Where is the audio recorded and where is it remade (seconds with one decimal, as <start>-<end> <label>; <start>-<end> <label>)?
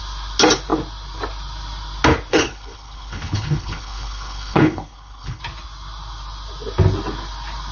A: 0.0-2.3 recorded; 2.3-5.4 remade; 5.4-7.7 recorded